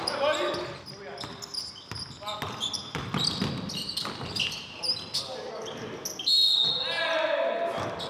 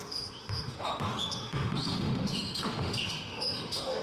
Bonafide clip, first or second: first